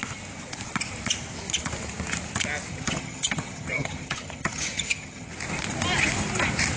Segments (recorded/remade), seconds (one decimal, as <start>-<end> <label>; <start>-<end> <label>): 0.0-2.7 recorded; 2.7-5.3 remade; 5.3-6.8 recorded